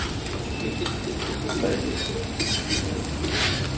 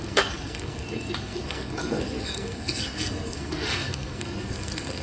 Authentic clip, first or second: first